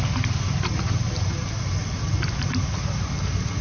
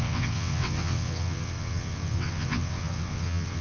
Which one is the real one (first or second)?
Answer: first